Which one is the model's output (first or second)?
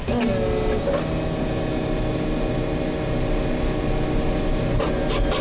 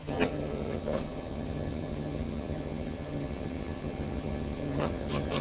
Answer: second